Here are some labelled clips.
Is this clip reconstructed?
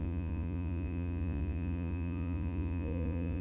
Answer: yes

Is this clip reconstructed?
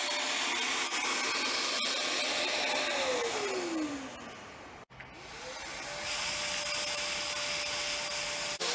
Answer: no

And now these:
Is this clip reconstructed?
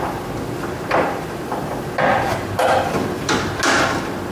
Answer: no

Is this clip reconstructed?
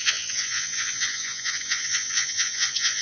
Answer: yes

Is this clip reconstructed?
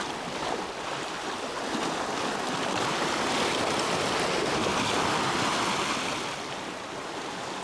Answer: no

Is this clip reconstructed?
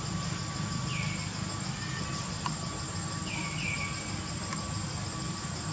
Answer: no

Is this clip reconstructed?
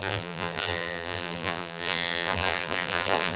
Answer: yes